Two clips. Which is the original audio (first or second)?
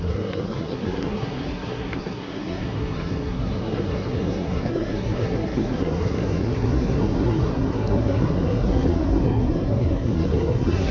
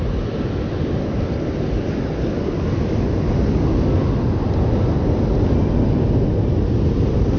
second